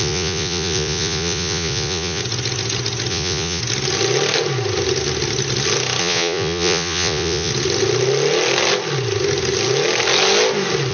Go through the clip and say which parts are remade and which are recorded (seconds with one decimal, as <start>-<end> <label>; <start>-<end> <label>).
0.0-2.2 remade; 2.2-3.1 recorded; 3.1-3.6 remade; 3.6-6.0 recorded; 6.0-7.5 remade; 7.5-10.9 recorded